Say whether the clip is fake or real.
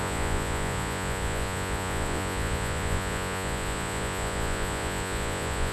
fake